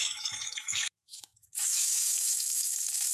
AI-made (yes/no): yes